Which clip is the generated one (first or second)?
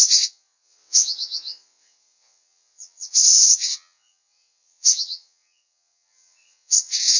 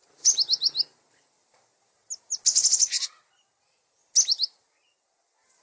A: first